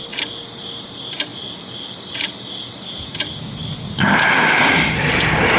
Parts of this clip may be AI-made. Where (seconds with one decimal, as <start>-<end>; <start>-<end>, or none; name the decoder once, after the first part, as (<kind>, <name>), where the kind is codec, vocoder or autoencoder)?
none